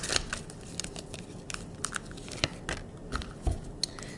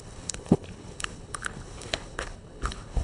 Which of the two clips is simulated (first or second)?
second